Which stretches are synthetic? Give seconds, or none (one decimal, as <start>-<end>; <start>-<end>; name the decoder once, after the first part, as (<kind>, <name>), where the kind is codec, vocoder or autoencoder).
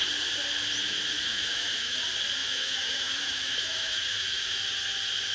1.3-2.0 (autoencoder, DAC-VAE); 2.4-4.6